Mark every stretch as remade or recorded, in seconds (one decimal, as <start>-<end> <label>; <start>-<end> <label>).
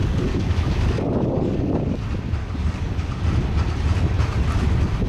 0.0-2.0 remade; 2.0-2.4 recorded; 2.4-3.2 remade; 3.2-5.1 recorded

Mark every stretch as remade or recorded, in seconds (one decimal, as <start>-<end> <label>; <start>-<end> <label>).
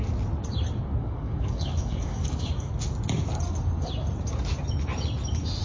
0.0-1.0 recorded; 1.0-2.7 remade; 2.7-5.6 recorded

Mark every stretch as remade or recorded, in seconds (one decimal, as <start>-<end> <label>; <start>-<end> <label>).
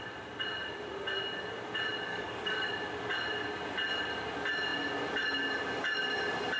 0.0-2.1 recorded; 2.1-2.7 remade; 2.7-6.6 recorded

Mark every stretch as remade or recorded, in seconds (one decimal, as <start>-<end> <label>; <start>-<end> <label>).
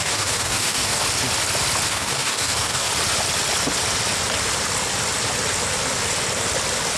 0.0-1.0 remade; 1.0-1.9 recorded; 1.9-2.9 remade; 2.9-7.0 recorded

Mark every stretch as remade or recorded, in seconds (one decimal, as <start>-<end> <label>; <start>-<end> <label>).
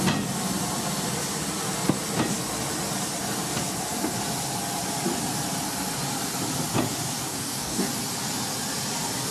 0.0-7.3 recorded; 7.3-7.9 remade; 7.9-9.3 recorded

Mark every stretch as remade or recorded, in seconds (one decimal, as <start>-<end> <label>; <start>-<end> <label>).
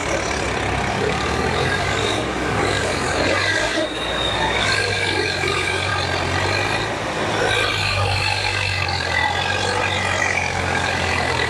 0.0-0.9 recorded; 0.9-5.9 remade; 5.9-7.8 recorded; 7.8-9.2 remade; 9.2-10.2 recorded; 10.2-11.5 remade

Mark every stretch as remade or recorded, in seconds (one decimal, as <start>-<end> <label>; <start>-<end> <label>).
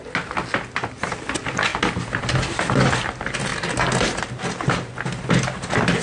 0.0-6.0 recorded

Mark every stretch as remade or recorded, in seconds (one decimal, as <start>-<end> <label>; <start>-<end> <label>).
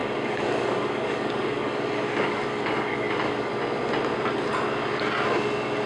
0.0-3.5 remade; 3.5-5.9 recorded